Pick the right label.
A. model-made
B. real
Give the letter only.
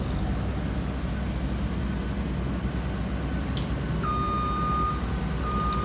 B